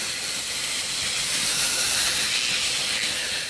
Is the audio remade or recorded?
recorded